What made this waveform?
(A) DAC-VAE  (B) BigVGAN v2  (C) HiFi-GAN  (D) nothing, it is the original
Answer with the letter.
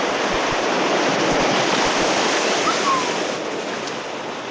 B